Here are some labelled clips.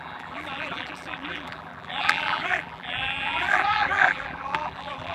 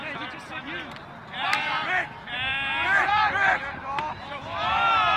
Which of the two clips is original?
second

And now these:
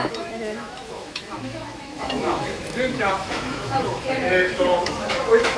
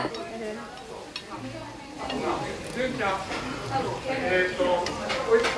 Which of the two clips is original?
second